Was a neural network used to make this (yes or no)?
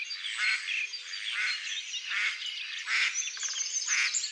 no